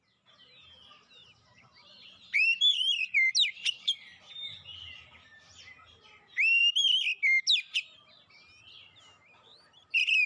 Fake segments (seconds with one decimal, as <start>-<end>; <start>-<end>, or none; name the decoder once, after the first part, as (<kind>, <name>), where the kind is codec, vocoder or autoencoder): 1.2-3.3 (vocoder, BigVGAN v2); 9.5-10.3